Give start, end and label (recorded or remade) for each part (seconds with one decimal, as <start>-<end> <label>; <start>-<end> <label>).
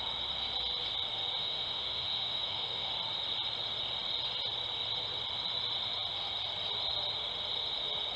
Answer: 0.0-1.4 recorded; 1.4-2.9 remade; 2.9-8.2 recorded